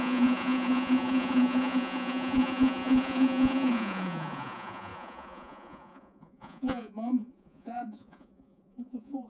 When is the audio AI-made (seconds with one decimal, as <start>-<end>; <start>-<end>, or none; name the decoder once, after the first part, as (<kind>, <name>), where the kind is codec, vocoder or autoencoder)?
0.0-9.3 (vocoder, Vocos)

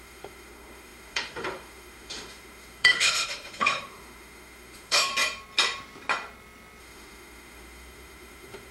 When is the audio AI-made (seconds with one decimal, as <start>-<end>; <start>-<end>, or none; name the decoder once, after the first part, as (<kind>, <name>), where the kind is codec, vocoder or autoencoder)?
0.0-5.1 (autoencoder, DAC-VAE); 6.8-8.7

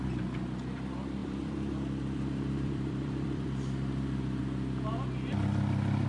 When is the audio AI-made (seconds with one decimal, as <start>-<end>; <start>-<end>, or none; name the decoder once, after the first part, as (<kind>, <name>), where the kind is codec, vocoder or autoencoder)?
1.2-4.4 (vocoder, BigVGAN v2)

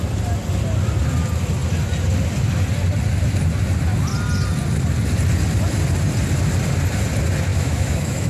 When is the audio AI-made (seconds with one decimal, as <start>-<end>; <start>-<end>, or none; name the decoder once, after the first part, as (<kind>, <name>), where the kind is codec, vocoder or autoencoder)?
7.5-8.3 (autoencoder, DAC-VAE)

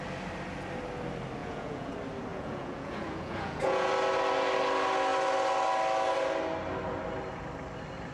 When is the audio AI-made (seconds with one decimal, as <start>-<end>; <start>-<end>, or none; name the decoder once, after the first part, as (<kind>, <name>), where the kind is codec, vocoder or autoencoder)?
1.4-1.9 (vocoder, Vocos); 2.3-3.9

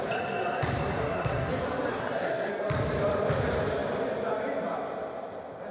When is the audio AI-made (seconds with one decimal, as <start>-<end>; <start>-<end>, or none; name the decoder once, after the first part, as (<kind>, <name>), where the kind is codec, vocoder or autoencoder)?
1.0-1.5 (codec, SNAC); 1.9-2.5

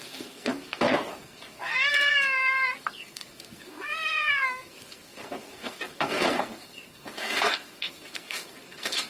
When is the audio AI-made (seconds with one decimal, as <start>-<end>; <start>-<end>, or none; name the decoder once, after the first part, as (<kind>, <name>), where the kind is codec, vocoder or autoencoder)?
0.0-9.1 (codec, SNAC)

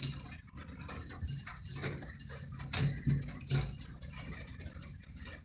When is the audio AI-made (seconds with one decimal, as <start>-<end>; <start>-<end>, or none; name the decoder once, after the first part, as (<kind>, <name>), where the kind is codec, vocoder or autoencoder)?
none